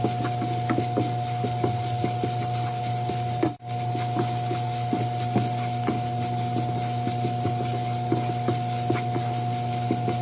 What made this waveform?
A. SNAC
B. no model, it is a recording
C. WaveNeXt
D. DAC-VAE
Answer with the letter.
B